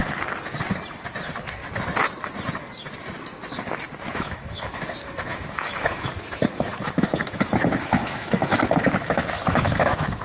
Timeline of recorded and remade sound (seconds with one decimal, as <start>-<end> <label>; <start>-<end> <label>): 0.0-4.1 recorded; 4.1-10.2 remade